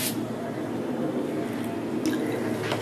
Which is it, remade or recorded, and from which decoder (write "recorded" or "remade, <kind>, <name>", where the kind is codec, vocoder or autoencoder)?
recorded